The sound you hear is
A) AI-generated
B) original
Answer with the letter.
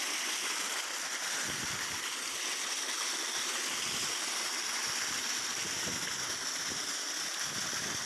B